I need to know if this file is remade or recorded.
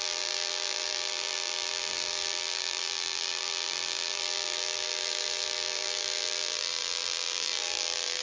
remade